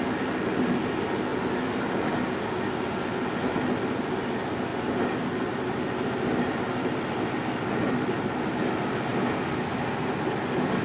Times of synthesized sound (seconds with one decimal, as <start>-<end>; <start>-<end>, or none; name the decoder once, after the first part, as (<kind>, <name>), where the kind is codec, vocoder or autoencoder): none